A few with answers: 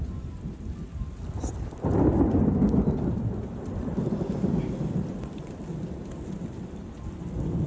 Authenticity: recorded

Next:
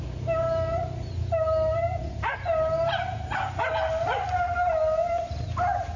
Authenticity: recorded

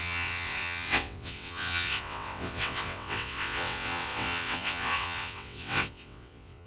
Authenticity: remade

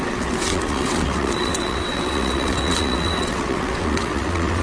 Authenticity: remade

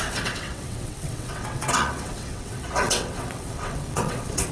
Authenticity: remade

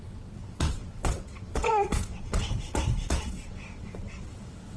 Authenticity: remade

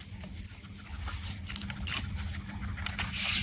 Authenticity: recorded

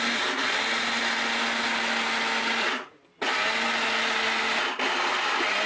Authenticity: recorded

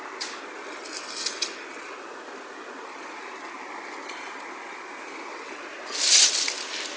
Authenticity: recorded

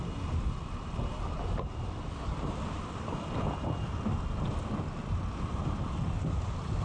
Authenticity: recorded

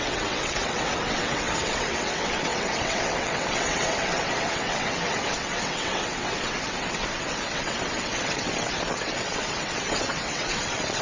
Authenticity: remade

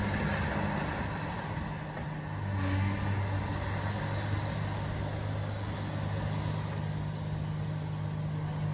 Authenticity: recorded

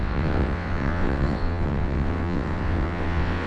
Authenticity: remade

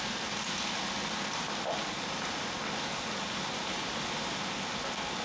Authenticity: recorded